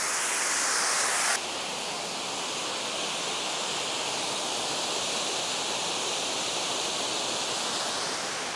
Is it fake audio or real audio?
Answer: real